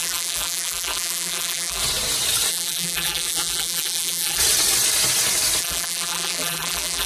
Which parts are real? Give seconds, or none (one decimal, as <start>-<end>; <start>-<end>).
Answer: 1.8-2.5; 4.4-5.6